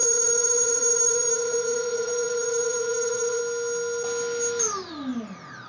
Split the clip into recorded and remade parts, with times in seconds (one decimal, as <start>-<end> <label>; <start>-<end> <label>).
0.0-3.4 remade; 3.4-5.7 recorded